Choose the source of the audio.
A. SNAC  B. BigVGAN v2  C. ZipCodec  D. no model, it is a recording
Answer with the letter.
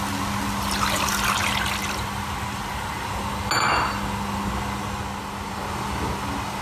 D